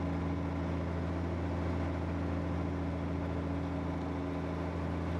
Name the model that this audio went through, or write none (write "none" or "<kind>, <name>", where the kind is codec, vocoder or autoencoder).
none